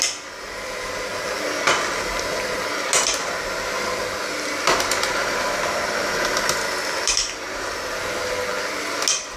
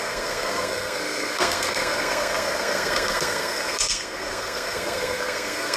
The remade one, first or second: second